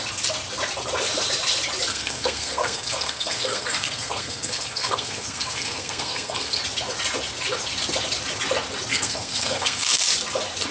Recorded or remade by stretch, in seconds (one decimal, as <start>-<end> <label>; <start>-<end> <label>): 0.0-1.9 recorded; 1.9-6.6 remade; 6.6-8.9 recorded; 8.9-10.0 remade; 10.0-10.7 recorded